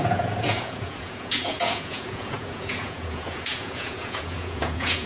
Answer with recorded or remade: remade